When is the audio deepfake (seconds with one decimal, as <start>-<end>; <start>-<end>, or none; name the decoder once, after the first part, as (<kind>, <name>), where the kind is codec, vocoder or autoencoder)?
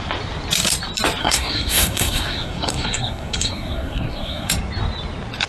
1.2-4.5 (codec, SNAC)